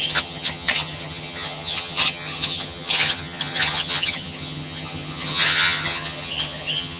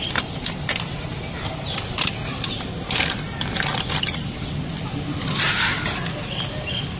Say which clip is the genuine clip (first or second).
second